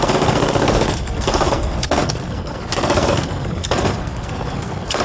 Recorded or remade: remade